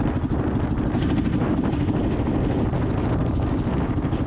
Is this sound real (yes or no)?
yes